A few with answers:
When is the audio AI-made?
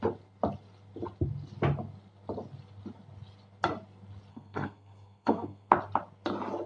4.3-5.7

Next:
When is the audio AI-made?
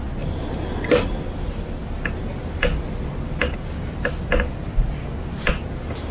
none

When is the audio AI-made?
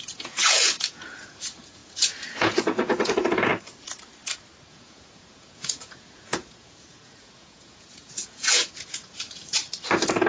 0.0-3.5; 4.7-9.6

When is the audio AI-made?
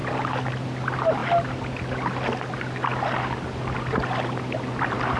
none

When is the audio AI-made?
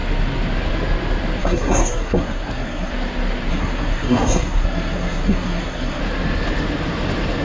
1.4-2.9; 3.5-6.0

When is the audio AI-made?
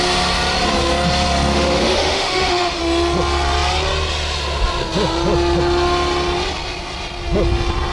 1.5-2.8